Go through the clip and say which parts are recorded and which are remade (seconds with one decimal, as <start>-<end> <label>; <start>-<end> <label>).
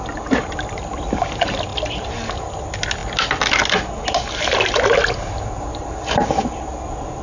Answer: 0.0-7.2 recorded